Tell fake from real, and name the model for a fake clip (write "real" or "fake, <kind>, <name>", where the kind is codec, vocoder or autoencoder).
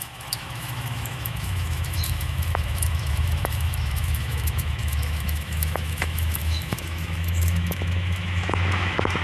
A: fake, autoencoder, DAC-VAE